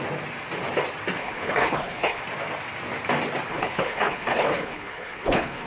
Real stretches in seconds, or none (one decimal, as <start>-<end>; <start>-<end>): 0.0-1.2; 2.2-3.5